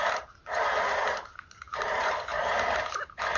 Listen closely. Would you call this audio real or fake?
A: fake